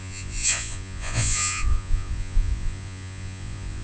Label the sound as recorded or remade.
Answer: remade